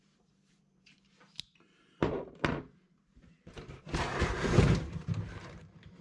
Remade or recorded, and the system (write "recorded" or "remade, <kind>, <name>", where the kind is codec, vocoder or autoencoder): remade, vocoder, BigVGAN v2